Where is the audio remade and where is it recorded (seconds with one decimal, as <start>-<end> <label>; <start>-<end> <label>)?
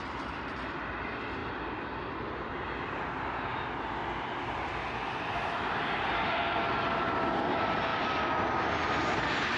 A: 0.0-9.6 recorded